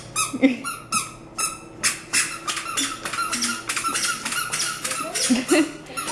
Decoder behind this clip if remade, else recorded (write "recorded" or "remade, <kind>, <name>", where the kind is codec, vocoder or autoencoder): recorded